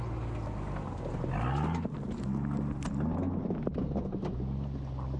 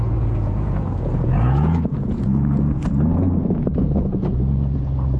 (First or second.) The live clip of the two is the first